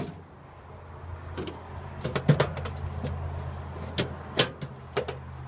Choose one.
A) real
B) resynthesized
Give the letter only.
A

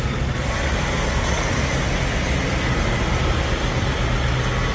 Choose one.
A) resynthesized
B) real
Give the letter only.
B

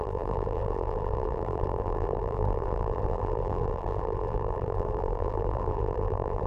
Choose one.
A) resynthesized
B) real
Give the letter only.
A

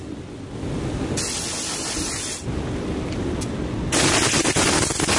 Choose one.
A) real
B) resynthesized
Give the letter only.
A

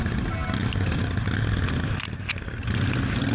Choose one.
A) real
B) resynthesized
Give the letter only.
A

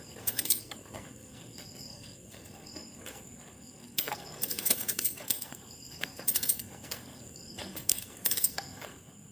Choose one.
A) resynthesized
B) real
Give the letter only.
A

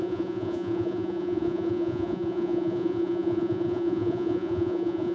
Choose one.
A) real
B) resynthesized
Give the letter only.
B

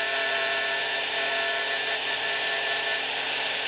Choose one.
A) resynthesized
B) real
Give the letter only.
A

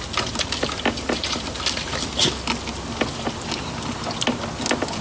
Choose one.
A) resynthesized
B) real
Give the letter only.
B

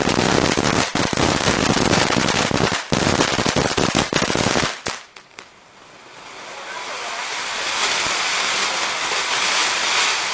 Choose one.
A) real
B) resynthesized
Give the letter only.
A